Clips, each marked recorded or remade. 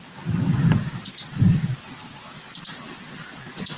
recorded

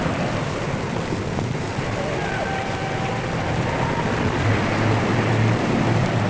remade